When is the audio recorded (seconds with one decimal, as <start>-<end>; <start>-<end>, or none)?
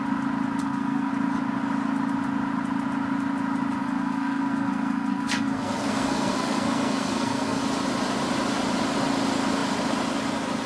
0.0-0.6; 1.1-3.8; 7.6-10.7